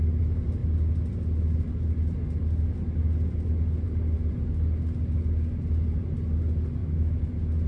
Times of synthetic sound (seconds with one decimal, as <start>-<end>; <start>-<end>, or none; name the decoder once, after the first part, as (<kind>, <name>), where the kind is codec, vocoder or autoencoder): 6.8-7.3 (autoencoder, DAC-VAE)